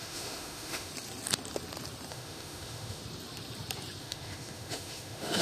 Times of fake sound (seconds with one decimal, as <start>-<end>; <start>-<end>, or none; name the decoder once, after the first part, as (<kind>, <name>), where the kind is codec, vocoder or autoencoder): 0.0-0.9 (autoencoder, DAC-VAE); 2.1-3.0; 4.0-5.4